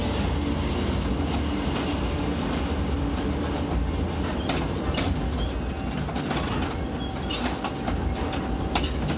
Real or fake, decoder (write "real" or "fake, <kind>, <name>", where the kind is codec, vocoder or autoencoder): real